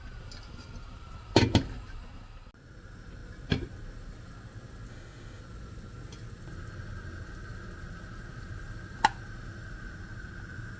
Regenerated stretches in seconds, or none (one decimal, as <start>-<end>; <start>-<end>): 4.9-5.4